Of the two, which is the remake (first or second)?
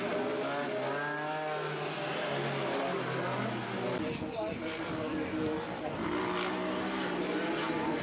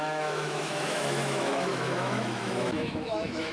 second